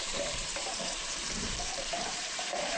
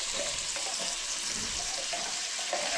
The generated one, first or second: first